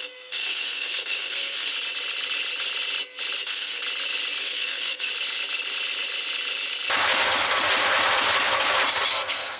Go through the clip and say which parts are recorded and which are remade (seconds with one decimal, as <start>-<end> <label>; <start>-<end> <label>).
0.0-1.7 remade; 1.7-3.4 recorded; 3.4-3.8 remade; 3.8-4.4 recorded; 4.4-5.1 remade; 5.1-9.1 recorded; 9.1-9.6 remade